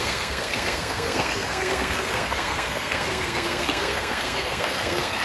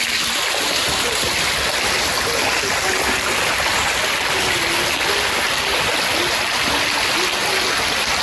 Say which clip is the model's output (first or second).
first